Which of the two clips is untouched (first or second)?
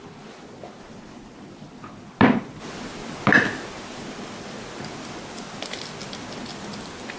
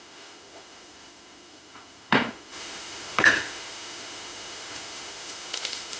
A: first